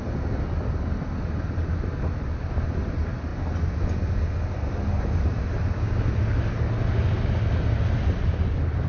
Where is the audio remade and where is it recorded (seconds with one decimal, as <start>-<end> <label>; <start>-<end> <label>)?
0.0-8.9 recorded